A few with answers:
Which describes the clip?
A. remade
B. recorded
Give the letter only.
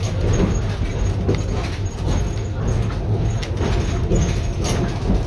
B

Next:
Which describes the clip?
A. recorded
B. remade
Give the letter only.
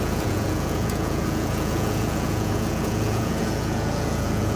B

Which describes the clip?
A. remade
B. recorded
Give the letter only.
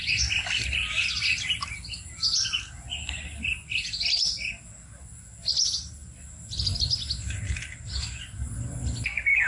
B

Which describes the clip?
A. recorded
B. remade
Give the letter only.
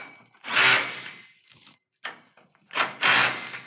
A